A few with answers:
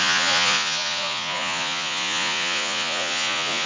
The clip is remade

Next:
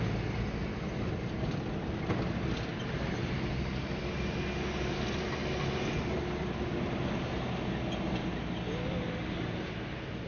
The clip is recorded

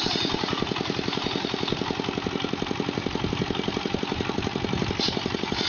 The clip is recorded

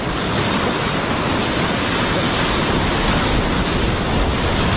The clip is recorded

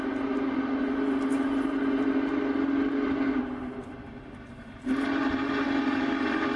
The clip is recorded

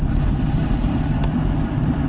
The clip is remade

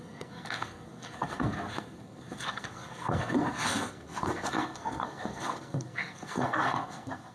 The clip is remade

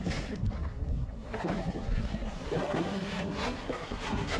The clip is remade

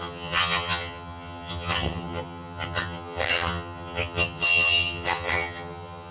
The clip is remade